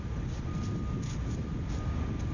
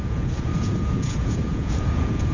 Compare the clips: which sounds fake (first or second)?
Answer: second